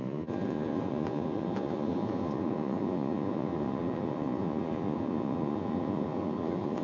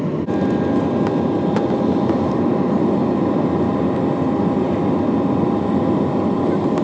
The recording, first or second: second